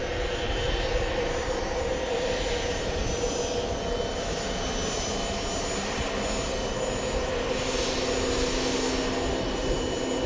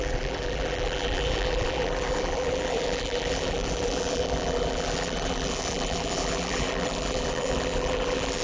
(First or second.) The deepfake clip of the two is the second